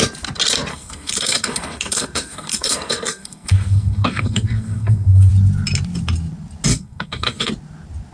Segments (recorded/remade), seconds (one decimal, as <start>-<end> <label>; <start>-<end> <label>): 0.0-0.7 recorded; 0.7-5.3 remade; 5.3-6.7 recorded; 6.7-7.5 remade; 7.5-8.1 recorded

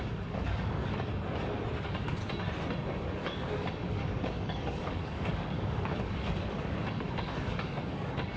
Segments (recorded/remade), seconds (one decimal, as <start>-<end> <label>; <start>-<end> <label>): 0.0-1.1 remade; 1.1-1.8 recorded; 1.8-2.2 remade; 2.2-3.0 recorded; 3.0-8.4 remade

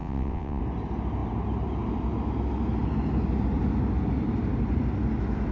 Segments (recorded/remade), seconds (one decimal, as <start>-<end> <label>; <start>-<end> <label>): 0.0-0.6 remade; 0.6-5.5 recorded

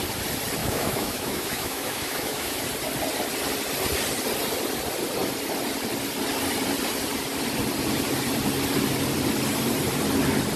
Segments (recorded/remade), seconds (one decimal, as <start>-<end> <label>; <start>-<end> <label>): 0.0-0.6 recorded; 0.6-2.6 remade; 2.6-10.6 recorded

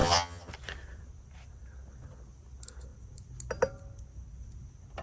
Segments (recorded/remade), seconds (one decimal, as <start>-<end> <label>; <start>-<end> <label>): 0.0-0.5 remade; 0.5-5.0 recorded